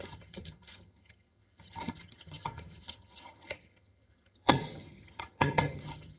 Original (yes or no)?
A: no